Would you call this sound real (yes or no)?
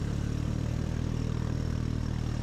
yes